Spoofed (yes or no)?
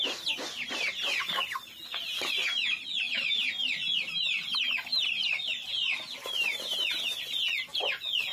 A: no